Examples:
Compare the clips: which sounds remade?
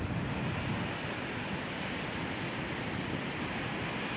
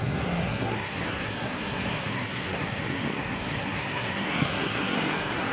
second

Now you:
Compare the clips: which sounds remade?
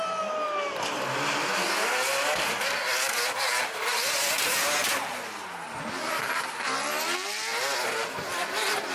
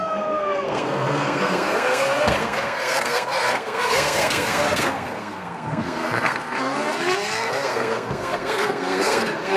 second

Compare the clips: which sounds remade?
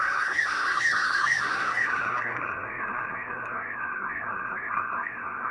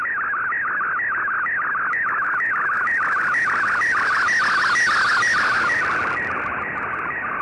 first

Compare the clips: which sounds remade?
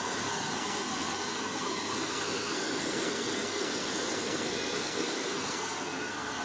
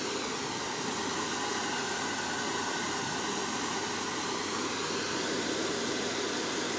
first